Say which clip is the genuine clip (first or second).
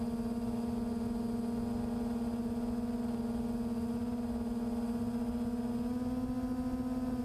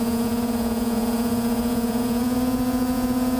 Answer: first